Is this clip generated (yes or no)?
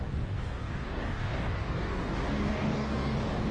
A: yes